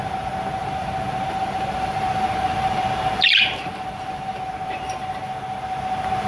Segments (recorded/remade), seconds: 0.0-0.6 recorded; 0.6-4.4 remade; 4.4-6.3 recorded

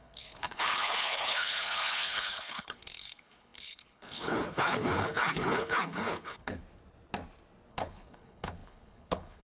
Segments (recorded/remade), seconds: 0.0-6.6 remade; 6.6-7.7 recorded; 7.7-9.4 remade

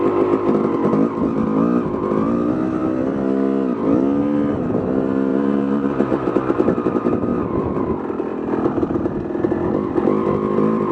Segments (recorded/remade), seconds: 0.0-5.3 recorded; 5.3-6.3 remade; 6.3-10.9 recorded

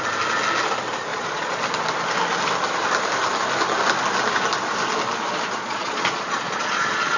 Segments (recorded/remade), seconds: 0.0-1.1 recorded; 1.1-1.6 remade; 1.6-5.6 recorded; 5.6-7.2 remade

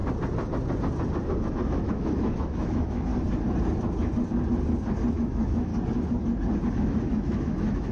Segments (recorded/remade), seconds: 0.0-1.5 recorded; 1.5-3.1 remade; 3.1-5.1 recorded; 5.1-5.7 remade; 5.7-6.7 recorded; 6.7-7.9 remade

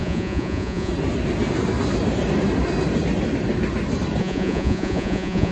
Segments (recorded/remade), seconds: 0.0-0.9 remade; 0.9-4.2 recorded; 4.2-5.5 remade

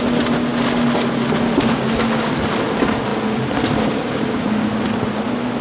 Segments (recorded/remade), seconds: 0.0-5.6 recorded

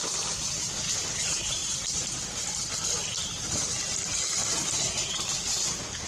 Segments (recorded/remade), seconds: 0.0-6.1 recorded